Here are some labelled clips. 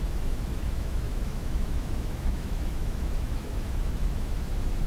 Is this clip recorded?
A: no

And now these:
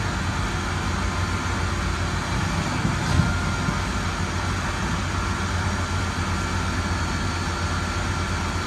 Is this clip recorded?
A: yes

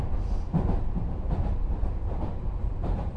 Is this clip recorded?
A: yes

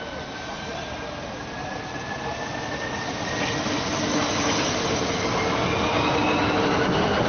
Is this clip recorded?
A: yes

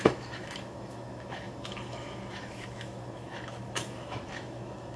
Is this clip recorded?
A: no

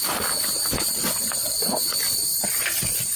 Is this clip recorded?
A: yes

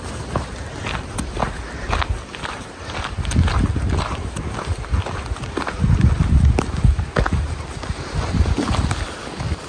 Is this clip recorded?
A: yes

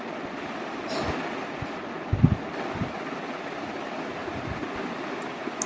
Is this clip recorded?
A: yes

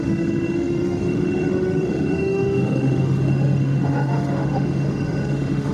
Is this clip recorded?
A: no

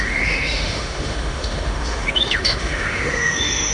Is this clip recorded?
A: no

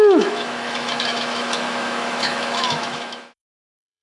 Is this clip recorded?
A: no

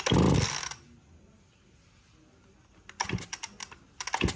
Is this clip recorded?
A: yes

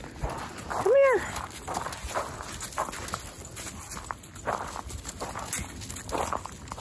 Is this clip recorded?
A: yes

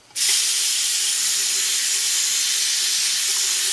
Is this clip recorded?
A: yes